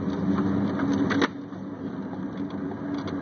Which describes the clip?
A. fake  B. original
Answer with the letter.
B